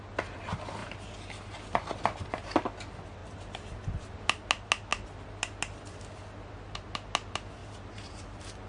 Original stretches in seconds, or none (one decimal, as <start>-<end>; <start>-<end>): 0.0-0.8; 1.3-3.2; 3.7-7.6